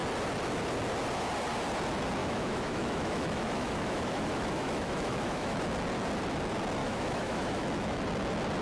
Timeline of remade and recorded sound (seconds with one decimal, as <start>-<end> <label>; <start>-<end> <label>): 0.0-2.2 recorded; 2.2-5.6 remade; 5.6-6.8 recorded; 6.8-8.0 remade; 8.0-8.6 recorded